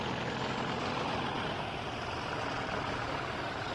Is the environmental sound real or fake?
real